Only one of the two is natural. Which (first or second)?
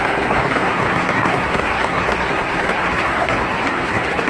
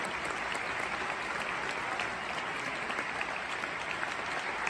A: second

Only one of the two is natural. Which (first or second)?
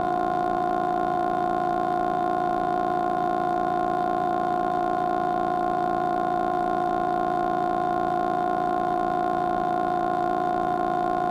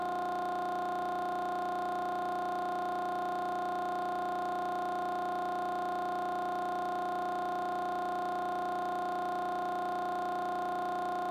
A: second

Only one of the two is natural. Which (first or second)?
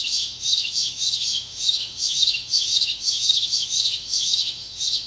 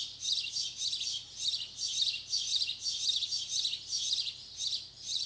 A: second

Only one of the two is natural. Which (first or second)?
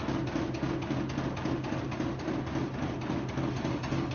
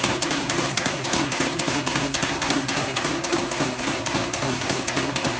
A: first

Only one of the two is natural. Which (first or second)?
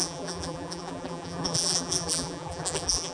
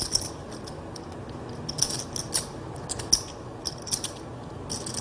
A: second